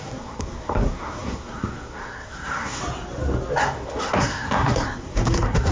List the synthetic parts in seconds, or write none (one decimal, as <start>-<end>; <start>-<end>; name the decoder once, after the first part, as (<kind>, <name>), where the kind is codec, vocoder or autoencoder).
0.0-2.8 (codec, SNAC); 3.6-5.7

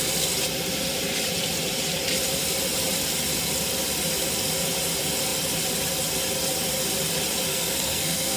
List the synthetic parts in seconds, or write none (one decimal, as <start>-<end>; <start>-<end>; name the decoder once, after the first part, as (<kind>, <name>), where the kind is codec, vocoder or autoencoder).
7.5-8.4 (codec, SNAC)

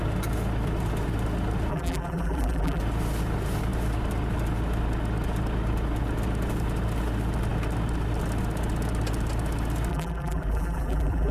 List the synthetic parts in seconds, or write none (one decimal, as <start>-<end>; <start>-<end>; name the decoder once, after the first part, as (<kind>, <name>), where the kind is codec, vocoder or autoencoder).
1.7-2.8 (vocoder, BigVGAN v2); 9.9-11.3

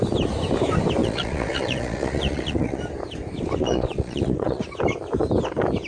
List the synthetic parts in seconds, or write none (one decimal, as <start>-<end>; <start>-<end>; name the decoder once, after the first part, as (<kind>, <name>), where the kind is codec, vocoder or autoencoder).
1.0-2.8 (vocoder, Vocos); 3.6-4.6

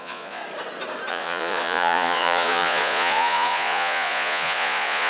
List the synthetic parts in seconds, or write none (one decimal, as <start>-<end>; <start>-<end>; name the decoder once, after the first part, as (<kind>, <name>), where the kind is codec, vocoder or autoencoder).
0.0-0.4 (vocoder, Vocos); 1.1-5.1

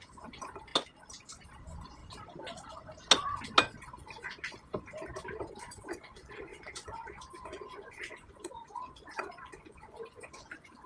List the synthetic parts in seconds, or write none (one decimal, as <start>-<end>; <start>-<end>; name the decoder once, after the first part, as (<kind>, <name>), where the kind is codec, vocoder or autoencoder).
0.0-0.7 (vocoder, Vocos); 1.6-2.0; 5.6-10.9

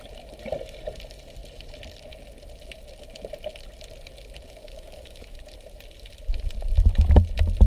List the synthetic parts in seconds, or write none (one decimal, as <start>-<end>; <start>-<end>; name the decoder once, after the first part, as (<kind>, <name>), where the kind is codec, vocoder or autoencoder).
4.6-5.4 (autoencoder, DAC-VAE)